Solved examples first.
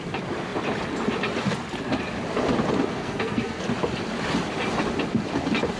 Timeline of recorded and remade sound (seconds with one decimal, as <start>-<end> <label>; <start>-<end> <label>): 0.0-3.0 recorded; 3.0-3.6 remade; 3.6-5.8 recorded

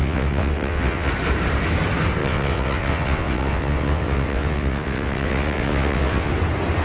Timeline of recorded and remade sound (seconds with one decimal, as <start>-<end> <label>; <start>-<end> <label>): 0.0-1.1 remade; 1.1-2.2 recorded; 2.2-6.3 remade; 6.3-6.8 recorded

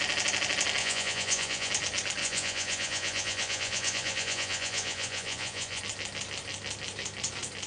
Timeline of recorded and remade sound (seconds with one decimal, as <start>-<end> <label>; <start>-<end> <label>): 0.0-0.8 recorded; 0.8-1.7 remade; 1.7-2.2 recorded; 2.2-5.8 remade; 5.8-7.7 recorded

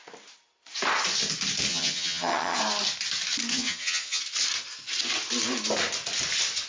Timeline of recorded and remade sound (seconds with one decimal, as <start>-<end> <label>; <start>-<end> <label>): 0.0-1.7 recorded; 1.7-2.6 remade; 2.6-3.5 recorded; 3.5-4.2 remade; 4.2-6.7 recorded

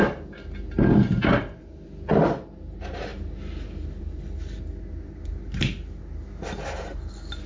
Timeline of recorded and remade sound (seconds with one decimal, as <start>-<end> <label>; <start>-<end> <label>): 0.0-7.5 recorded

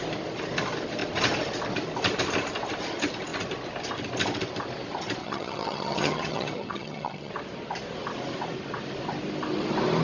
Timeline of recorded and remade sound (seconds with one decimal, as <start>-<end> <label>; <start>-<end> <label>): 0.0-5.2 recorded; 5.2-7.3 remade; 7.3-10.0 recorded

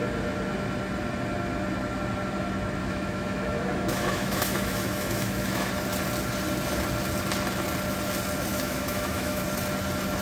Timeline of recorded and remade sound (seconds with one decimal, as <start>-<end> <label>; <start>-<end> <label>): 0.0-2.8 recorded; 2.8-5.7 remade; 5.7-8.5 recorded; 8.5-9.4 remade; 9.4-10.2 recorded

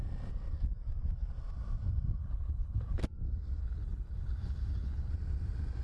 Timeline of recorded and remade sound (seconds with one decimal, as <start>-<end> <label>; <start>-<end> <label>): 0.0-2.2 recorded; 2.2-3.0 remade; 3.0-3.6 recorded; 3.6-5.1 remade; 5.1-5.8 recorded